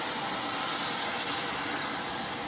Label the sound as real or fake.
real